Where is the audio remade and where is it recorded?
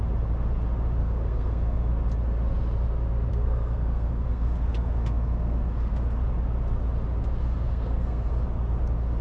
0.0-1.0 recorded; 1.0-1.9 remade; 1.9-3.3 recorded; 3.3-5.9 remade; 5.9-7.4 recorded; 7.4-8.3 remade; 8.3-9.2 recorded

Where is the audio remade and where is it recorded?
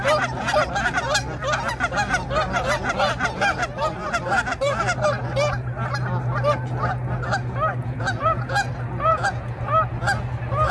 0.0-7.8 recorded; 7.8-8.7 remade; 8.7-9.1 recorded; 9.1-9.6 remade; 9.6-10.7 recorded